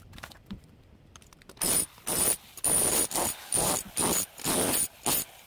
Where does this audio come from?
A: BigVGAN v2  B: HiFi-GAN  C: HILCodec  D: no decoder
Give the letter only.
A